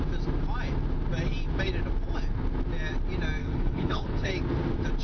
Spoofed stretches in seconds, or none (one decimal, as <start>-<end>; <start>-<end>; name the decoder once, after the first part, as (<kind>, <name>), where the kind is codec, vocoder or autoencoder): 3.4-4.3 (codec, HILCodec)